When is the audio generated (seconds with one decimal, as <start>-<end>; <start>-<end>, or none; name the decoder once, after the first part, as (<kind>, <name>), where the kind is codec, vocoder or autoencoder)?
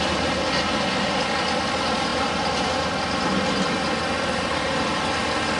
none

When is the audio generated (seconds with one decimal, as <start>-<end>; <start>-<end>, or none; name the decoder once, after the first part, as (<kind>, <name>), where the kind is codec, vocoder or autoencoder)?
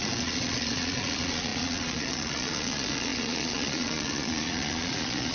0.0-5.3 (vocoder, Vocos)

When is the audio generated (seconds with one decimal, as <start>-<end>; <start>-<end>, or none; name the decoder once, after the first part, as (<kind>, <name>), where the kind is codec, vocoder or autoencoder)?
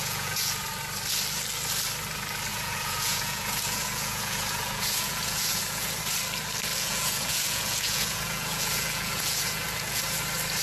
0.0-0.6 (vocoder, Vocos); 2.5-6.0; 6.7-10.0